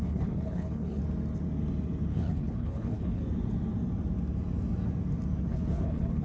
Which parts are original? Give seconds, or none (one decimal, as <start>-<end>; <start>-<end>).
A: 1.0-2.1; 3.2-5.4